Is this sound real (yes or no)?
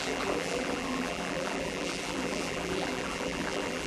no